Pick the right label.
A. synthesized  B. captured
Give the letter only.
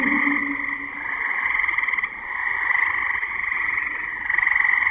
B